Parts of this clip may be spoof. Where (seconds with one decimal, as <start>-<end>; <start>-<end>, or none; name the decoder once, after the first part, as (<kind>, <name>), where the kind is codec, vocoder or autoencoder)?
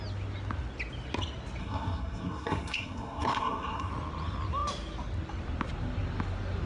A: 1.6-3.9 (codec, SNAC)